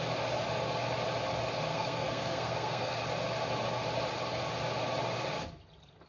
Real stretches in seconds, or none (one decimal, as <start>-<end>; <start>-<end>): 0.0-1.7; 3.0-6.1